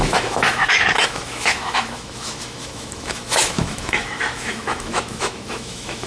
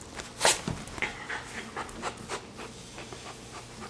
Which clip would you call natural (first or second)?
second